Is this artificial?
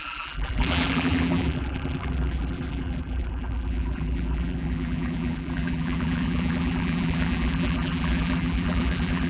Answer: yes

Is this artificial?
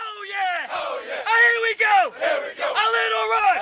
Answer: no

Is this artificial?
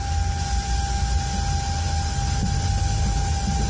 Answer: no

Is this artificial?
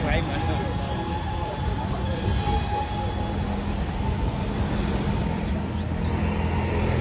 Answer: no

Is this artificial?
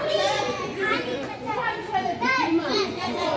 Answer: yes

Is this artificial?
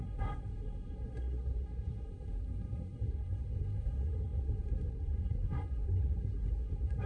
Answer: yes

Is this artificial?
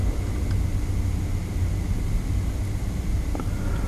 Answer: no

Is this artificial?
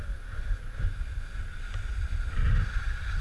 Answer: no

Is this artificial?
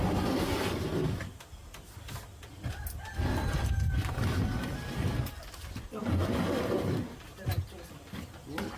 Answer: no